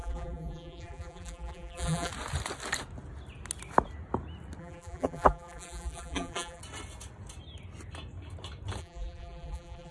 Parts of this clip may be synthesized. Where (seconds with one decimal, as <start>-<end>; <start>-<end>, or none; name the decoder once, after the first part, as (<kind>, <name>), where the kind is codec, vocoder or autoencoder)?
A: 0.0-2.1 (vocoder, BigVGAN v2); 4.6-6.6; 8.8-9.9